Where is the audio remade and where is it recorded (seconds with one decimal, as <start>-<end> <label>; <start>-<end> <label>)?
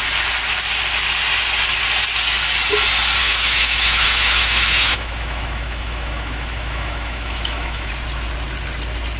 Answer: 0.0-3.2 recorded; 3.2-7.9 remade; 7.9-9.2 recorded